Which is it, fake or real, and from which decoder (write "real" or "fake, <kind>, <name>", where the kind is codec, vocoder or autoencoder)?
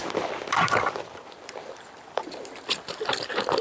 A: fake, vocoder, BigVGAN v2